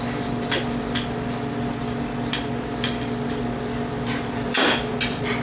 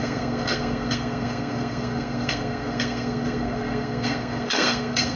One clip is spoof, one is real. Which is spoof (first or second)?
second